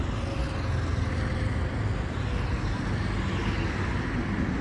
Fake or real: real